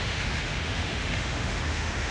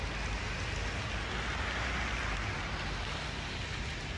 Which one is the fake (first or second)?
first